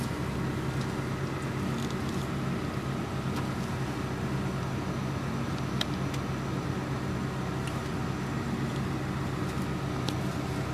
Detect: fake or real real